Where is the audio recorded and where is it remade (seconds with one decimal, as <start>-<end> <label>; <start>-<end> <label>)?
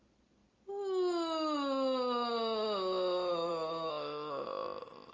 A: 0.0-3.9 recorded; 3.9-5.1 remade